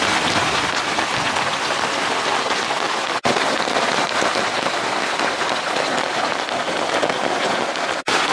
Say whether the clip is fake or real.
real